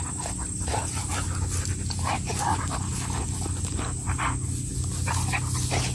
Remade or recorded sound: recorded